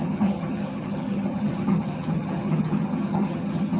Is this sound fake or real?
fake